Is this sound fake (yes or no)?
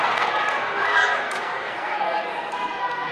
yes